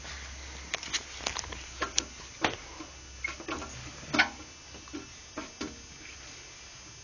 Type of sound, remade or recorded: recorded